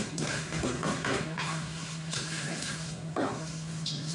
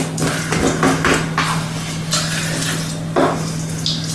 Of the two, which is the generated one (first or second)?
first